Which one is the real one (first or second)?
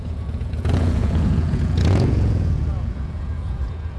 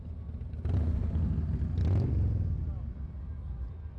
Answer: second